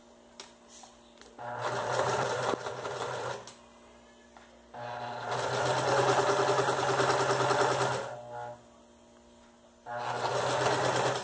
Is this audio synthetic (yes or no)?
no